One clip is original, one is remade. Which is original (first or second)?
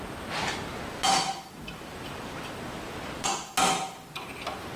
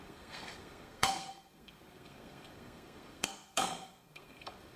first